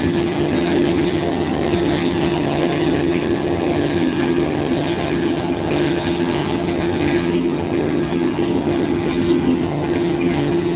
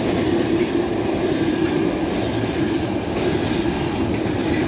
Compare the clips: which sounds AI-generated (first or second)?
first